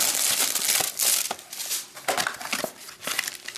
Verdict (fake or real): real